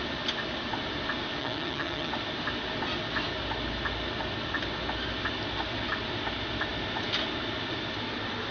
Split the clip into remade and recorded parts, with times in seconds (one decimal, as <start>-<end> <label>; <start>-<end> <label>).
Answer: 0.0-1.4 recorded; 1.4-2.1 remade; 2.1-8.5 recorded

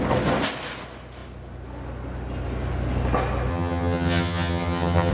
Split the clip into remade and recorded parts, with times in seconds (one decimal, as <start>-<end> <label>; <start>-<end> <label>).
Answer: 0.0-3.5 recorded; 3.5-5.1 remade